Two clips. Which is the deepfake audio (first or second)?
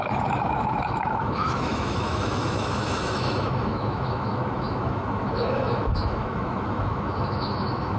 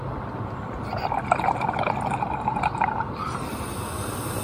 first